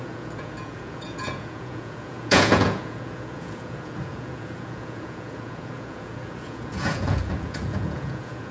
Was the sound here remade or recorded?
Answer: remade